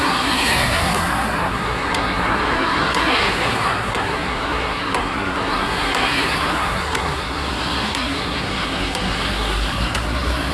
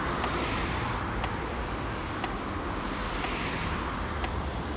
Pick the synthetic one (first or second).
first